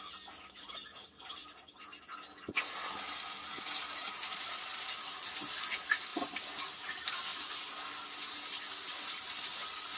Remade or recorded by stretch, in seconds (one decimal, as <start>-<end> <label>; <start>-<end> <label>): 0.0-10.0 recorded